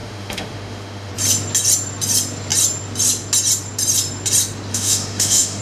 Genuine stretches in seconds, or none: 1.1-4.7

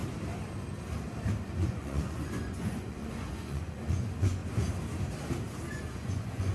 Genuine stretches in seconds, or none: 0.0-1.6; 4.4-5.7